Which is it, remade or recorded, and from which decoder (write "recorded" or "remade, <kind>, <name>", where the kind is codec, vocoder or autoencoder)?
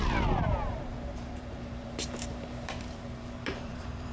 remade, vocoder, BigVGAN v2